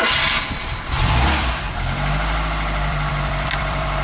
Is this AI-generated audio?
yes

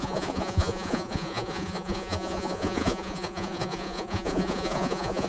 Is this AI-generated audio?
yes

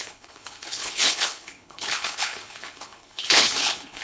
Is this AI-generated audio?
yes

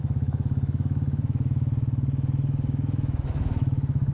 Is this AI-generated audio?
yes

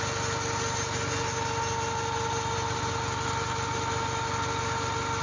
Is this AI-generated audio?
no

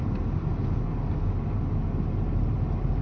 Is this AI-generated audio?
no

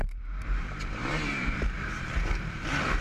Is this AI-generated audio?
yes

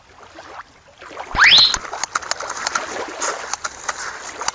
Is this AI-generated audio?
no